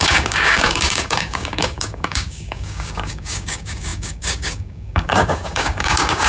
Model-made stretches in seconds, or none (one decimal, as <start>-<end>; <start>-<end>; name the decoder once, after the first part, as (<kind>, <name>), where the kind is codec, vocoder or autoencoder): 0.0-6.3 (codec, DAC)